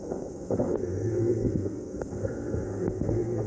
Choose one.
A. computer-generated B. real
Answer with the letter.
A